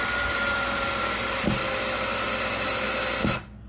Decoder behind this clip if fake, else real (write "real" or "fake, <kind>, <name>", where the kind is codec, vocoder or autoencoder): real